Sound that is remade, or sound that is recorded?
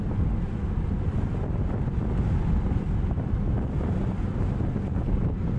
recorded